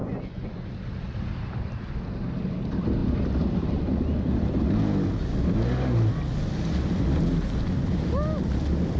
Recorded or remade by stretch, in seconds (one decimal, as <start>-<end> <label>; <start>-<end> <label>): 0.0-0.7 remade; 0.7-9.0 recorded